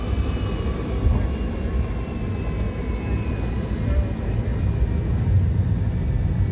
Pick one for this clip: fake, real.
real